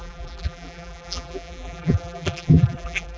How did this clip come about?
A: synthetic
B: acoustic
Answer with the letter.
A